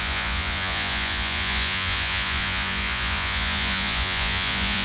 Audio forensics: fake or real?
fake